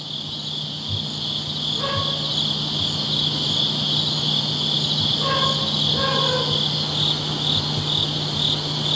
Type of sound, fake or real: real